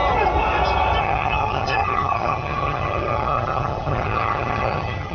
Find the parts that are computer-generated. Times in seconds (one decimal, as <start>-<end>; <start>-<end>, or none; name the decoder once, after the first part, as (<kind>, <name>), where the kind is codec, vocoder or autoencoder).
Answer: 1.0-5.1 (vocoder, HiFi-GAN)